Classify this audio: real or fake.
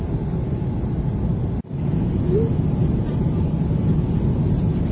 real